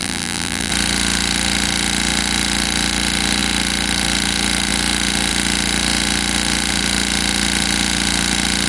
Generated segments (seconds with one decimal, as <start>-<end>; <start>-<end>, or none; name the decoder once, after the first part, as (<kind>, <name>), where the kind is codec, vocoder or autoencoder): 0.0-0.7 (vocoder, BigVGAN v2)

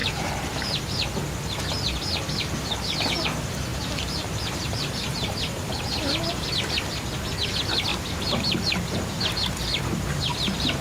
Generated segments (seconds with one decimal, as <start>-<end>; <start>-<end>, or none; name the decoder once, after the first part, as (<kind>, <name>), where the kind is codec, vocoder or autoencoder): 0.0-0.9 (vocoder, BigVGAN v2); 3.7-5.7; 7.9-9.2; 10.3-10.8

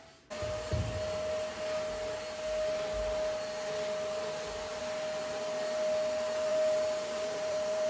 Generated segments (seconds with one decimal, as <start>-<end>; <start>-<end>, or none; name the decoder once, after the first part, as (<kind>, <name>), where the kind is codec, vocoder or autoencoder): 6.5-7.9 (vocoder, BigVGAN v2)